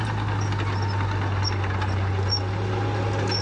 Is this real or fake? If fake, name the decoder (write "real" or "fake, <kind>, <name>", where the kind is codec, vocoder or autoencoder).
real